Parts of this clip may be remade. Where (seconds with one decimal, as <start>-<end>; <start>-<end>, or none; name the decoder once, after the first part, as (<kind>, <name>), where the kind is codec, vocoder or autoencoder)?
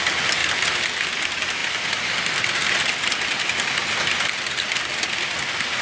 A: none